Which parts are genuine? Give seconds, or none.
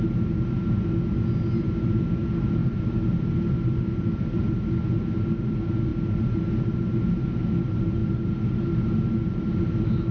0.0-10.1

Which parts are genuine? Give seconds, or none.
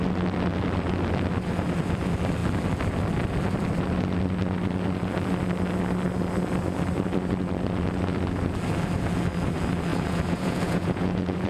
0.0-9.9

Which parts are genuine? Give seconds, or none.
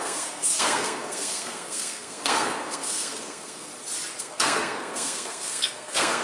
3.7-4.2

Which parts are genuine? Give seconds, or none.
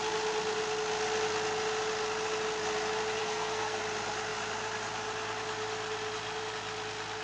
0.0-3.2; 3.8-7.2